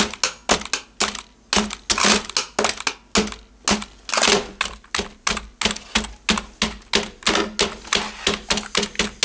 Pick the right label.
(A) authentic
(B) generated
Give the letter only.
A